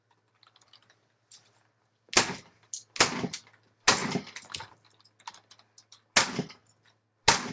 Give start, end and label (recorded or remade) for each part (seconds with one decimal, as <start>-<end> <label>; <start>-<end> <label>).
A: 0.0-7.5 recorded